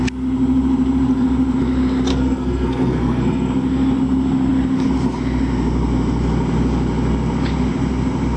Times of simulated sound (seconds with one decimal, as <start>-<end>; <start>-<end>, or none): 2.1-3.5